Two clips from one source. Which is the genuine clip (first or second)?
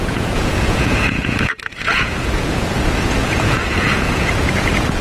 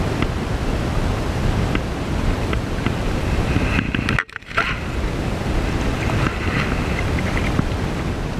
second